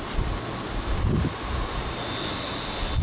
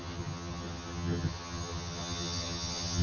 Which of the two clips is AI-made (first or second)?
second